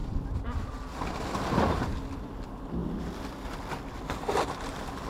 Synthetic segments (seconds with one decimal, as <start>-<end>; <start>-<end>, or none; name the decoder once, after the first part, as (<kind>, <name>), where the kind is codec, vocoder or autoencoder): none